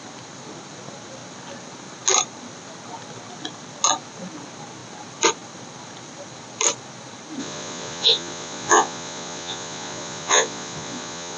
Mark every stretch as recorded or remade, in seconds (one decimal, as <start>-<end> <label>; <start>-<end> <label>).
0.0-7.4 recorded; 7.4-11.4 remade